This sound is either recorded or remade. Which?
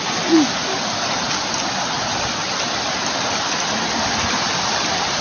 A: recorded